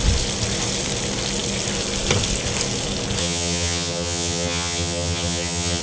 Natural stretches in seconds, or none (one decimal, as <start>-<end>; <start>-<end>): 0.0-3.2